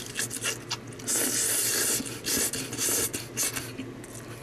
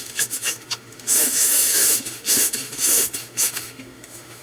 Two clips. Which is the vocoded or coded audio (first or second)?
second